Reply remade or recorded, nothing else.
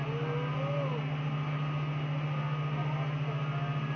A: recorded